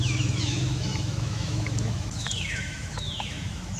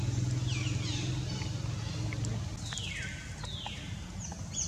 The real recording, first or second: second